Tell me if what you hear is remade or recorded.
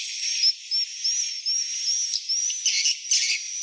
recorded